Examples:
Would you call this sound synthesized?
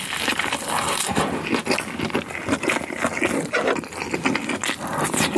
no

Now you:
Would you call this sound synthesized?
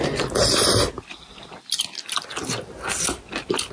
no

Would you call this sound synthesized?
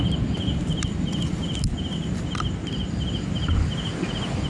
no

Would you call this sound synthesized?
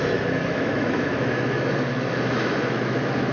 yes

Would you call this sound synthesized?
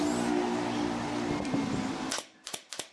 no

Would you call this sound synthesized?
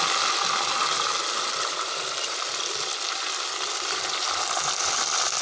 no